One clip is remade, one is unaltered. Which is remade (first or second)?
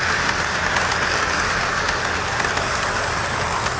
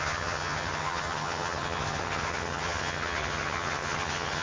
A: second